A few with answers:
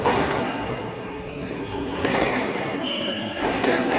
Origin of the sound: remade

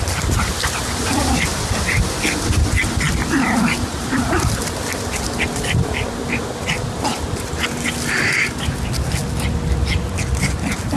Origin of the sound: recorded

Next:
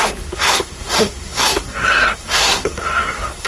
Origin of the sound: remade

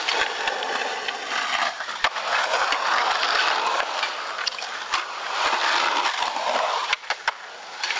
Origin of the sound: recorded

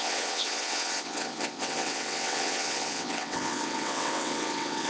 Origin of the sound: remade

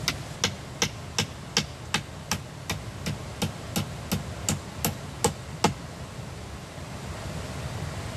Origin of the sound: recorded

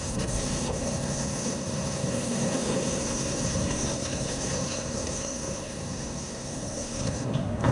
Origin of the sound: remade